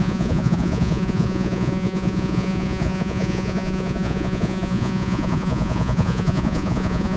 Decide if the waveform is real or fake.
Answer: fake